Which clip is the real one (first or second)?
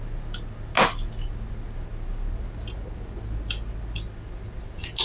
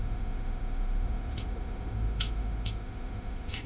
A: first